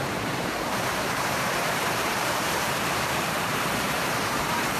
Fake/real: fake